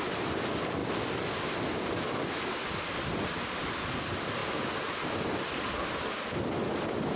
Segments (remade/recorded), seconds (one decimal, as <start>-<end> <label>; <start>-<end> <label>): 0.0-7.2 recorded